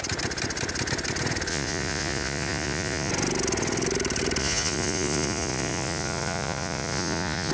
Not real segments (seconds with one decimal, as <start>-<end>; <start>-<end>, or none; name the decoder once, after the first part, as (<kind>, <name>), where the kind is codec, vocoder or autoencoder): 1.5-3.1 (vocoder, Vocos); 4.4-7.5